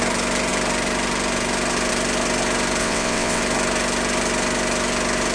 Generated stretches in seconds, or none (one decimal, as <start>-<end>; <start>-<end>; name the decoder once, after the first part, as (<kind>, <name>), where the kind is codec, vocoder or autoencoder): 2.8-3.4 (vocoder, WaveNeXt)